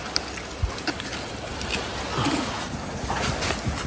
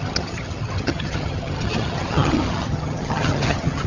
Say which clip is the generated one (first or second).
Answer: second